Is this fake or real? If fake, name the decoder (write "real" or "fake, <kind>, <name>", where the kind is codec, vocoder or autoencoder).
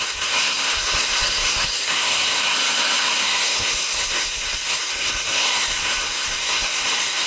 fake, codec, SNAC